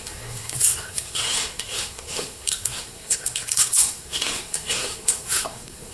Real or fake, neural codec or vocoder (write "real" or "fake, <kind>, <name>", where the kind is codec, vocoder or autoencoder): fake, codec, SNAC